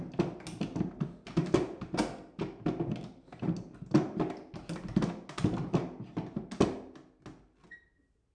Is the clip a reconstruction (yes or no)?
no